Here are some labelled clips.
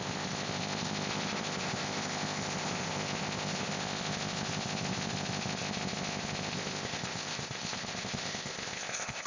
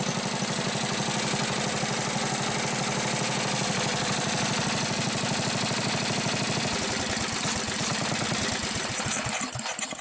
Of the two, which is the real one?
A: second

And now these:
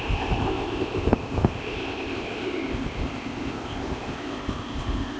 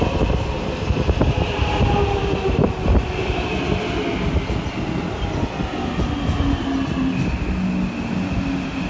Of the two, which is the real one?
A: second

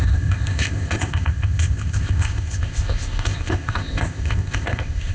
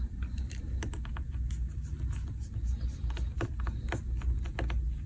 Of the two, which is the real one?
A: second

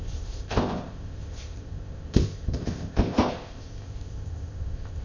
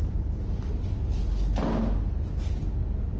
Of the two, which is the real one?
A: second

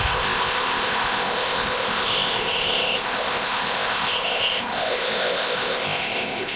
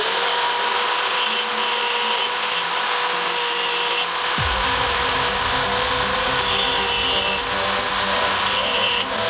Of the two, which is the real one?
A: second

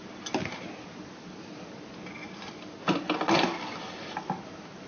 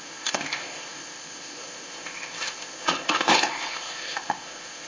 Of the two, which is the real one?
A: first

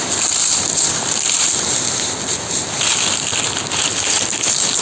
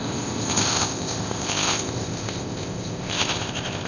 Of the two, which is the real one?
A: first